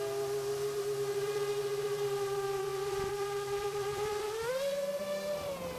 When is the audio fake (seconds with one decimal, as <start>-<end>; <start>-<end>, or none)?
0.0-5.8